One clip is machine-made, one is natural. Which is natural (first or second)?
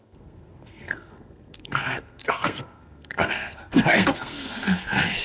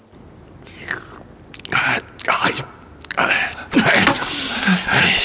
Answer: second